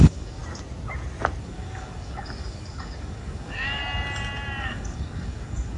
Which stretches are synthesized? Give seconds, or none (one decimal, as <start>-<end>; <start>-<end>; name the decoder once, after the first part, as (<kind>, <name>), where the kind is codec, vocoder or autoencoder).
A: 0.0-0.4 (codec, DAC); 1.4-3.8; 4.6-5.8